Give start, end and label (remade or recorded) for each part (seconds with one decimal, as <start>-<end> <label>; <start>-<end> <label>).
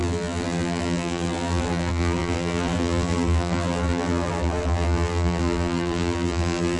0.0-6.8 remade